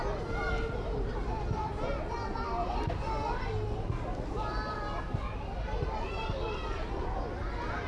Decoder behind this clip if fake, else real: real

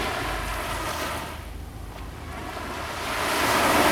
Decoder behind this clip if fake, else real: real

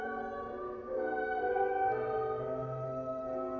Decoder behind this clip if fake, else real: real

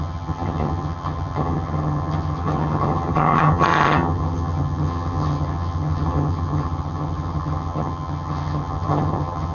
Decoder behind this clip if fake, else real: fake, vocoder, HiFi-GAN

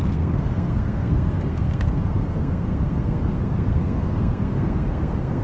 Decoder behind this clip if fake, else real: fake, codec, SNAC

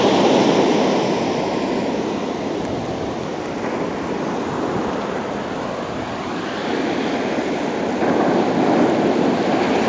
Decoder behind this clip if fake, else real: real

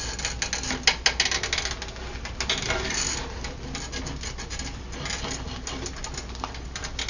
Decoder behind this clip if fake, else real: real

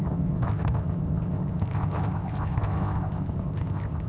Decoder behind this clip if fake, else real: fake, codec, ZipCodec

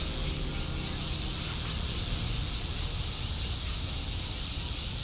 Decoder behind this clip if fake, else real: real